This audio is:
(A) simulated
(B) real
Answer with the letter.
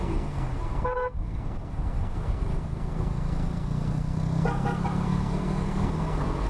A